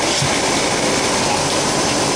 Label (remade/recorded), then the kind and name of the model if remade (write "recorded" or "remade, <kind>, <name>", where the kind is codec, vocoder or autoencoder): recorded